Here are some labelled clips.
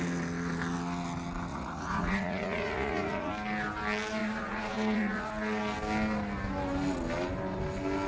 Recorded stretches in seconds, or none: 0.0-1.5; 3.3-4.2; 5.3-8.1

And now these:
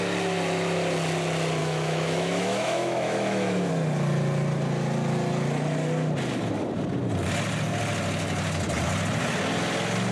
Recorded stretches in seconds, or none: 0.0-1.6; 3.7-10.1

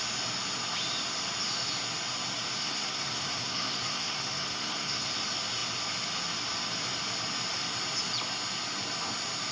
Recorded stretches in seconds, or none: 0.0-2.6; 5.1-9.5